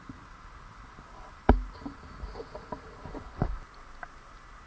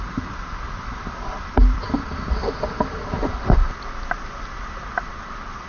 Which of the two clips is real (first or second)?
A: first